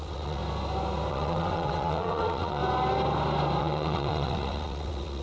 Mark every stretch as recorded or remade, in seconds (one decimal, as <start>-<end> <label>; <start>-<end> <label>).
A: 0.0-0.4 remade; 0.4-1.1 recorded; 1.1-2.6 remade; 2.6-3.6 recorded; 3.6-5.2 remade